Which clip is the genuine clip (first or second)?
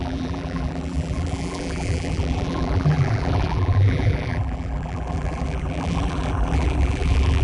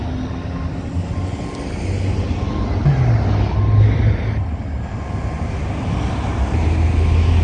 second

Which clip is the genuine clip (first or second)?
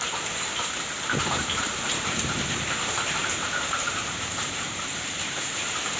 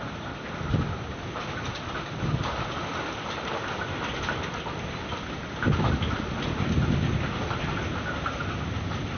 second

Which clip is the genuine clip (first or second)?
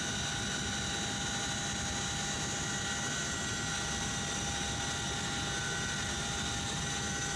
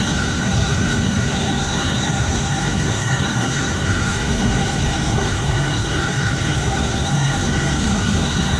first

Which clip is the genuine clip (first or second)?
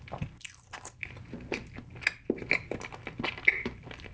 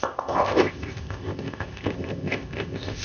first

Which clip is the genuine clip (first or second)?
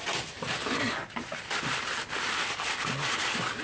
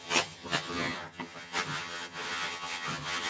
first